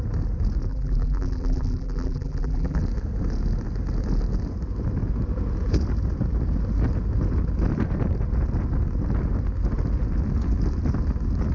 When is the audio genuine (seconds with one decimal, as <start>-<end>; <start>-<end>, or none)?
0.0-0.7; 2.8-11.5